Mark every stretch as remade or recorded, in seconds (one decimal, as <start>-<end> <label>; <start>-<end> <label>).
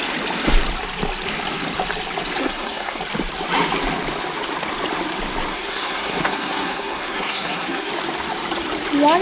0.0-2.4 recorded; 2.4-3.0 remade; 3.0-5.5 recorded; 5.5-7.9 remade; 7.9-9.2 recorded